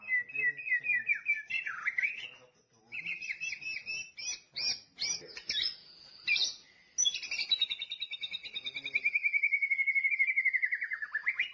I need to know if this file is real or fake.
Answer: real